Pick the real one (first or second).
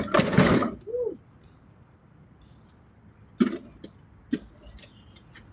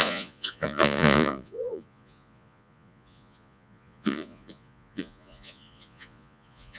first